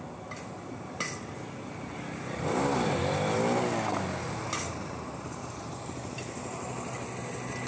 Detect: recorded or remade recorded